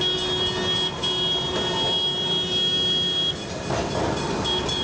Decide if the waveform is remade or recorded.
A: recorded